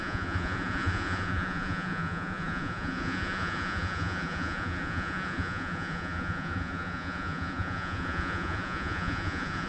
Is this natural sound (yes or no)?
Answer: no